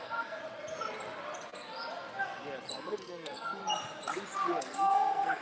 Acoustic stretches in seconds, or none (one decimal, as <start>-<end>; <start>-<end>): 0.4-2.7; 3.6-4.6